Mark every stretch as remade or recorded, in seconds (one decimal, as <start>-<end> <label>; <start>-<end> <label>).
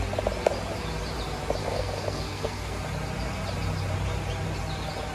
0.0-1.6 recorded; 1.6-2.8 remade; 2.8-5.1 recorded